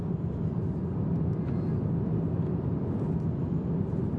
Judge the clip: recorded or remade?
recorded